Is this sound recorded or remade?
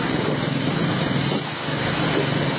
recorded